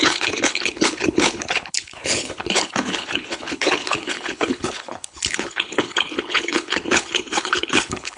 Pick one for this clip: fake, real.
fake